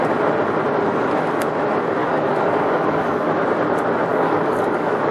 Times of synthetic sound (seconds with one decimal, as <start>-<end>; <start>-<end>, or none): 2.0-3.3; 4.1-5.1